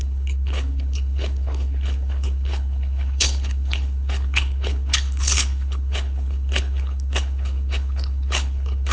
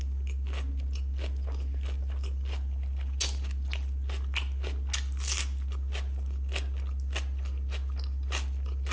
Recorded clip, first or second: second